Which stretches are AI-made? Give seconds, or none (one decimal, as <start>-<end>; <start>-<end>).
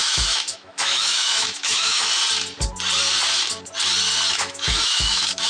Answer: 0.0-2.1; 4.3-5.5